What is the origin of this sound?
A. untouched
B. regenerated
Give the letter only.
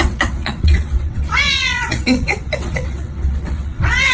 B